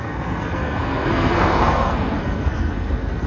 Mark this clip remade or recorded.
remade